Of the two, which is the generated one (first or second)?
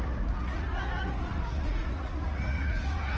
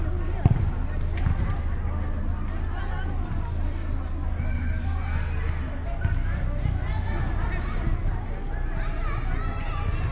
first